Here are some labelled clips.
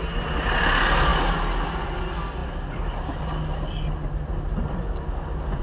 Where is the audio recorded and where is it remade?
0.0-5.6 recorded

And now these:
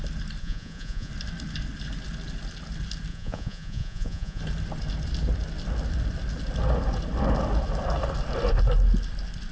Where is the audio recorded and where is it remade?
0.0-0.4 recorded; 0.4-1.1 remade; 1.1-3.1 recorded; 3.1-4.4 remade; 4.4-9.5 recorded